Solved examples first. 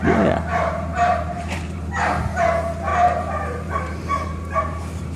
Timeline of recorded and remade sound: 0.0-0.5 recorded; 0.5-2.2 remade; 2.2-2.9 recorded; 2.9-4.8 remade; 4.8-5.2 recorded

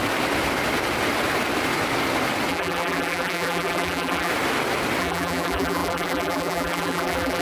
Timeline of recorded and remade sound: 0.0-2.5 recorded; 2.5-4.3 remade; 4.3-5.0 recorded; 5.0-7.4 remade